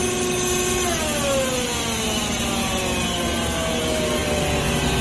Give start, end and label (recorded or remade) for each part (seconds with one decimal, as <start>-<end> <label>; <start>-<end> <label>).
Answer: 0.0-5.0 recorded